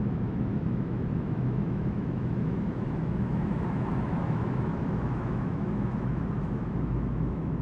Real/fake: fake